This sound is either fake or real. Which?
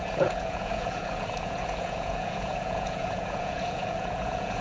fake